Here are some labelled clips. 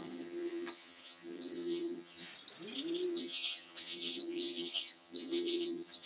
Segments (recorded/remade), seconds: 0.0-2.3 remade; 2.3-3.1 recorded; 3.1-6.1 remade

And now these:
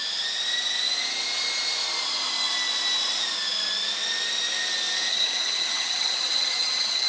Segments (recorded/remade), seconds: 0.0-5.1 recorded; 5.1-7.1 remade

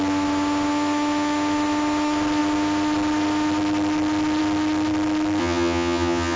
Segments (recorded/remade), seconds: 0.0-5.4 recorded; 5.4-6.4 remade

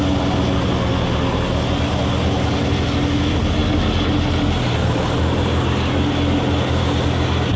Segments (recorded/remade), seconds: 0.0-7.6 recorded

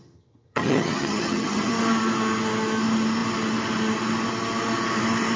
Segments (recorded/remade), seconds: 0.0-1.7 remade; 1.7-5.4 recorded